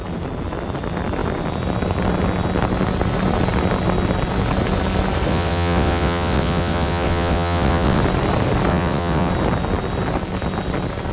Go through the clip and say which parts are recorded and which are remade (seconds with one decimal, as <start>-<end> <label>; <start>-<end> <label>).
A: 0.0-5.3 recorded; 5.3-8.0 remade; 8.0-8.7 recorded; 8.7-9.3 remade; 9.3-11.1 recorded